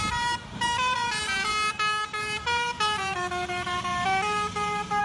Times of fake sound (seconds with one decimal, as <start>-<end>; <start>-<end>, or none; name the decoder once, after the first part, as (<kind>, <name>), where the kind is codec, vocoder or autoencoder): 0.0-1.5 (vocoder, BigVGAN v2); 2.2-3.9